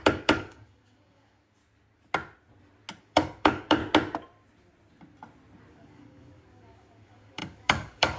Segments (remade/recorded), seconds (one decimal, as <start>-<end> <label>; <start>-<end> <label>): 0.0-1.6 remade; 1.6-3.0 recorded; 3.0-3.8 remade; 3.8-5.7 recorded; 5.7-8.2 remade